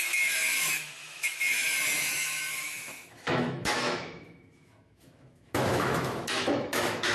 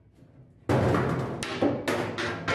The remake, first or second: first